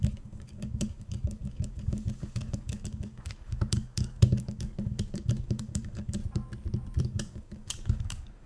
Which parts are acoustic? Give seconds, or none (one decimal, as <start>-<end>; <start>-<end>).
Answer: 6.2-7.0